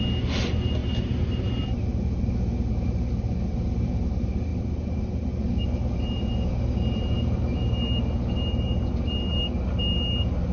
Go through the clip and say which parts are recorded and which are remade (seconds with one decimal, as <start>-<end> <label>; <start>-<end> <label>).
0.0-0.8 recorded; 0.8-2.3 remade; 2.3-10.5 recorded